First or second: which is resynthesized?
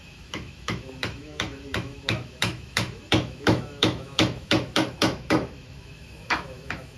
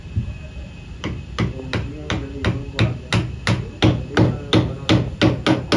first